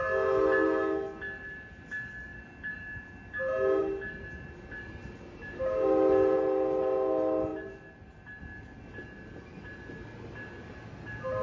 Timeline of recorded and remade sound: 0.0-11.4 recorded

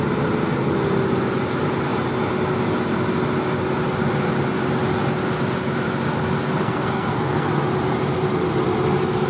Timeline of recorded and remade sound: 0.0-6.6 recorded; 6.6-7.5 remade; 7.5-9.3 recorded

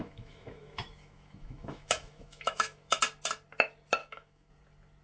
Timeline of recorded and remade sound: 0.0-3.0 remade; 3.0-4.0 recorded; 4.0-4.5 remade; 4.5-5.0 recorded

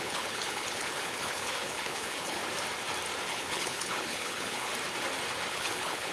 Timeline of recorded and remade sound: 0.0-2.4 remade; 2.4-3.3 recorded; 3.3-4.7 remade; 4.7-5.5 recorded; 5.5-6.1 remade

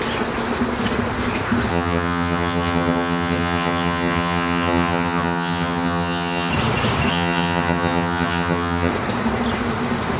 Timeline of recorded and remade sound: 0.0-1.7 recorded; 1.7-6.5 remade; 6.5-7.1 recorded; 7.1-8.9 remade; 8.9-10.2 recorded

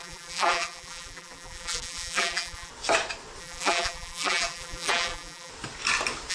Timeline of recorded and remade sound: 0.0-2.7 remade; 2.7-3.4 recorded; 3.4-5.5 remade; 5.5-6.3 recorded

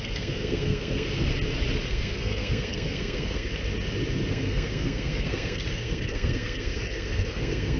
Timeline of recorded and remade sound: 0.0-1.3 remade; 1.3-1.9 recorded; 1.9-3.5 remade; 3.5-4.3 recorded; 4.3-7.8 remade

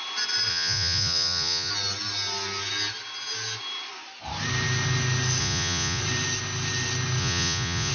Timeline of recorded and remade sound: 0.0-0.5 recorded; 0.5-1.7 remade; 1.7-5.4 recorded; 5.4-6.0 remade; 6.0-7.2 recorded; 7.2-7.9 remade